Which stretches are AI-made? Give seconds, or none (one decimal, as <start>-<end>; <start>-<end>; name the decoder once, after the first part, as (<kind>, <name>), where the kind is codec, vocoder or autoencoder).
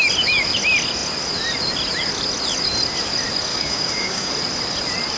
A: 3.5-4.3 (codec, DAC)